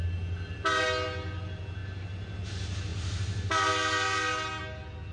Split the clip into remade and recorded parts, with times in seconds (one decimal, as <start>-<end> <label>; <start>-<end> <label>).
0.0-5.1 recorded